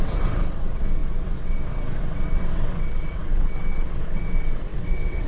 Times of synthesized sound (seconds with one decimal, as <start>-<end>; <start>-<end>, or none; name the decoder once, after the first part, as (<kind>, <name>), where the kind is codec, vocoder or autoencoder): 0.0-5.3 (vocoder, WaveNeXt)